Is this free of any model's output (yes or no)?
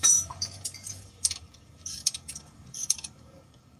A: no